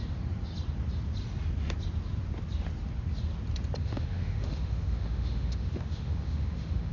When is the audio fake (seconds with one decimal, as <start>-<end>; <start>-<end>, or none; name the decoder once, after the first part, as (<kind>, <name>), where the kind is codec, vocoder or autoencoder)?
3.8-6.9 (autoencoder, DAC-VAE)